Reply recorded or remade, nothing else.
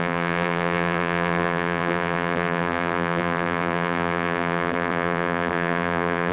remade